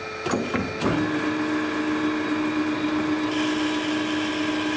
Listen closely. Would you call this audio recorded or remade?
recorded